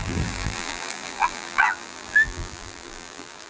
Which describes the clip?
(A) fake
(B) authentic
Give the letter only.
A